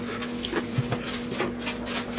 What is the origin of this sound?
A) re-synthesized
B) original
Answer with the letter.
B